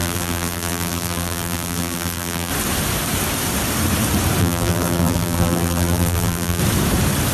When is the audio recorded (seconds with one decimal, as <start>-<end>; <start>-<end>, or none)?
2.5-4.4; 6.6-7.3